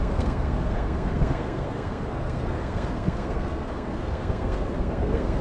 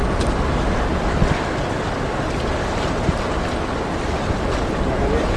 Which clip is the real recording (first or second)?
second